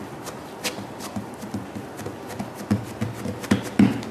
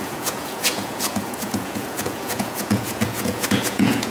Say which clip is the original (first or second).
first